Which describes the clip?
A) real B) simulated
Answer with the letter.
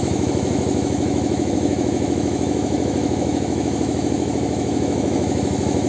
B